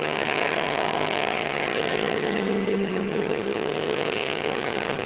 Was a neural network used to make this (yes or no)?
yes